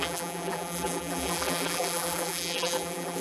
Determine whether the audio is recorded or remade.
remade